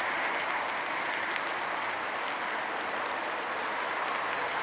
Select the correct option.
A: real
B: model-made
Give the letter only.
A